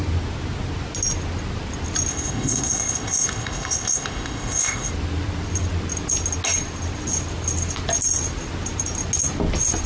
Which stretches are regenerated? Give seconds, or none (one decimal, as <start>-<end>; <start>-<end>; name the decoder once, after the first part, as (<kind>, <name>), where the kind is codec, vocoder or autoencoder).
2.1-4.9 (codec, ZipCodec)